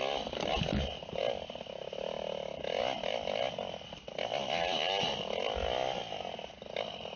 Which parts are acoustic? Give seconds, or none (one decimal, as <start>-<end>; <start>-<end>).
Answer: 0.0-7.2